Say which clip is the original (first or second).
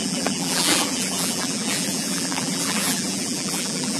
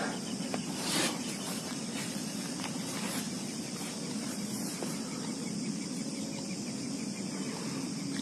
second